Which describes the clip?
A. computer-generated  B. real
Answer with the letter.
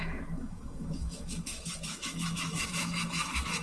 A